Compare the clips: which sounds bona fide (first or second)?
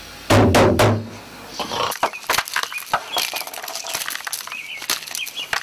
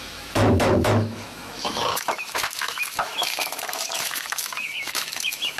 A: first